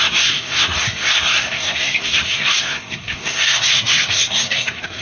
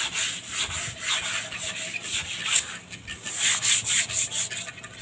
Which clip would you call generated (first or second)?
first